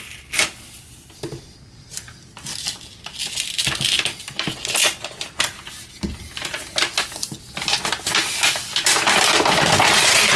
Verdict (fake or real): real